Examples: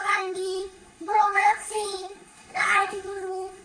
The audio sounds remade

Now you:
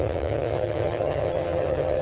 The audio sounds remade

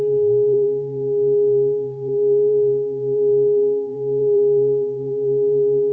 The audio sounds remade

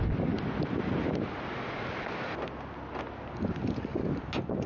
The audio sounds recorded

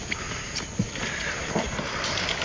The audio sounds recorded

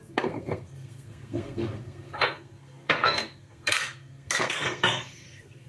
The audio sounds remade